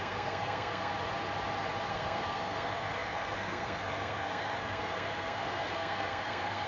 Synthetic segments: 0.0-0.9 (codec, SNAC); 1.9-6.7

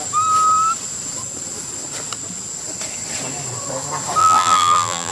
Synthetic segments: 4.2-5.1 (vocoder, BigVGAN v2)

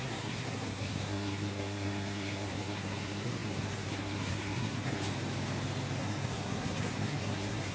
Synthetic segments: 0.0-5.1 (codec, SNAC); 6.0-7.7